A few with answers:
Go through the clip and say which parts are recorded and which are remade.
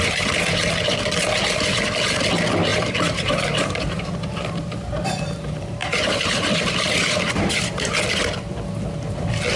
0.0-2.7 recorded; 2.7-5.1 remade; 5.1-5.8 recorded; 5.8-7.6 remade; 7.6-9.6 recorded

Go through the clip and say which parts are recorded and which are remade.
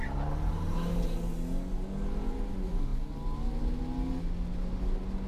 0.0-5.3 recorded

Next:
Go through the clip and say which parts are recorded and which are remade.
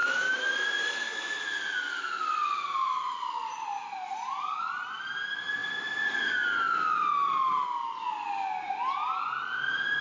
0.0-5.6 recorded; 5.6-6.2 remade; 6.2-10.0 recorded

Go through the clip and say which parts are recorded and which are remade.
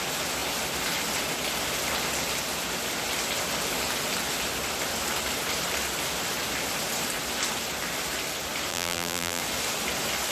0.0-8.7 recorded; 8.7-9.4 remade; 9.4-10.3 recorded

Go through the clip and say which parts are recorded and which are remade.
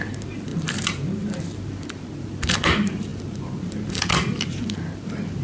0.0-5.4 remade